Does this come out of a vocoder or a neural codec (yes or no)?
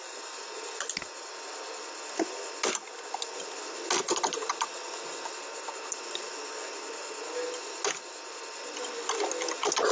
no